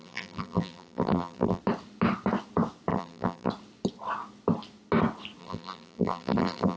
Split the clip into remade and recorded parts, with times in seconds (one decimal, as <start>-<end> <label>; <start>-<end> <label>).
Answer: 0.0-1.6 remade; 1.6-2.9 recorded; 2.9-3.5 remade; 3.5-5.4 recorded; 5.4-6.8 remade